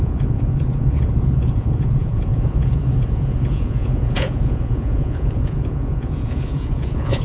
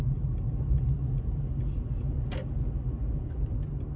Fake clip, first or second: first